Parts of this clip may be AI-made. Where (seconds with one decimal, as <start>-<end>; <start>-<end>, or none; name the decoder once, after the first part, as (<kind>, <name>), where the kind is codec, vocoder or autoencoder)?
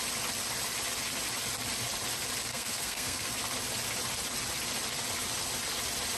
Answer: 2.5-3.4 (codec, SNAC)